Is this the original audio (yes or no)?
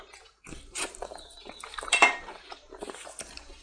no